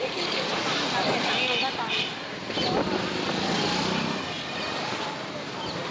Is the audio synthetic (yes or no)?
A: no